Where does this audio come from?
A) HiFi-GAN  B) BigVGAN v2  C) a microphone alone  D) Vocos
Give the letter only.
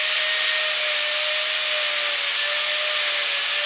C